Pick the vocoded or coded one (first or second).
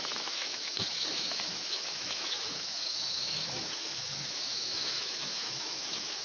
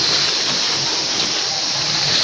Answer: first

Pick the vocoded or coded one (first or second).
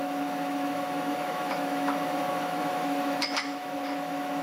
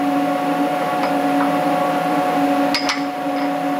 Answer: first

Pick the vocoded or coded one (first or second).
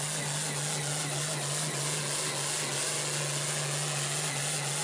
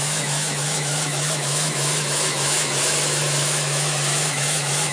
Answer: second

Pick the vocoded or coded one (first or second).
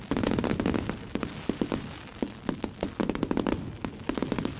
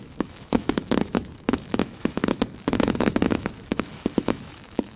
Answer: second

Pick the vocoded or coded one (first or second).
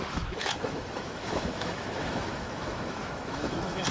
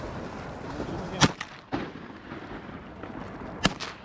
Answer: first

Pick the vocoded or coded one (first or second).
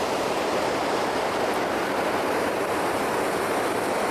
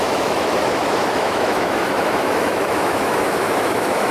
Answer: second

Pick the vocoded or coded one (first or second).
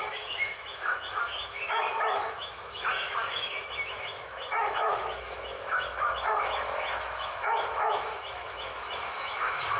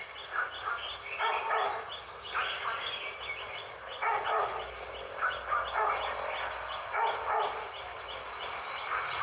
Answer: first